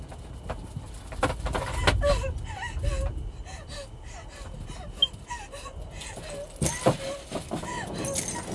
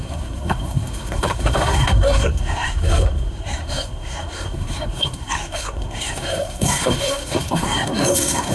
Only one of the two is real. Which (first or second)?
first